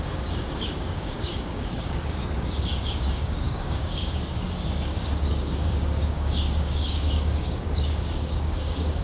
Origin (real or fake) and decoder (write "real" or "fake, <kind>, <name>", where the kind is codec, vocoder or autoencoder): fake, codec, DAC